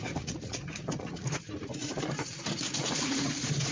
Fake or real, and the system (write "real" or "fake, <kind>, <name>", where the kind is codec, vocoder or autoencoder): fake, vocoder, Vocos